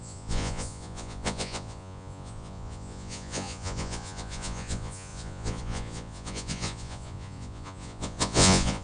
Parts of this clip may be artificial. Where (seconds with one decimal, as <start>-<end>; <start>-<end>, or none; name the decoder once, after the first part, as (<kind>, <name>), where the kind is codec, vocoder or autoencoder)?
0.0-8.8 (vocoder, Vocos)